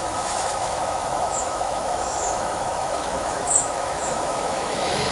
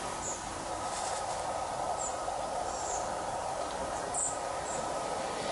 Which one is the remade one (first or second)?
first